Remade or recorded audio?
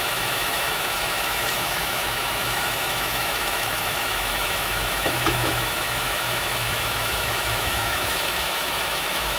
remade